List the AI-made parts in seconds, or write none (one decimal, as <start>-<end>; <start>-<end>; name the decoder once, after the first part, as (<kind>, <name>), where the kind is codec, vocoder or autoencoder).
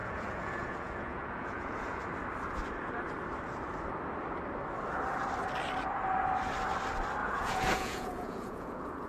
0.0-2.0 (vocoder, Vocos); 7.2-9.1